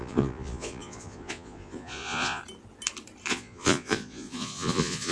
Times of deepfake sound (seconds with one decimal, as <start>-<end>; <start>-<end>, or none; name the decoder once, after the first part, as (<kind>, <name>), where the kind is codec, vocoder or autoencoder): 0.0-2.4 (vocoder, Vocos); 3.3-5.1